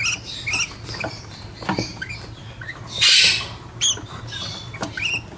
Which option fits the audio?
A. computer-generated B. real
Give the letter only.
B